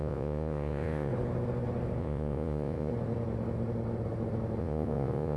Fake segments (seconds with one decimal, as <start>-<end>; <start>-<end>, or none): 0.0-1.1; 2.0-2.9; 4.6-5.4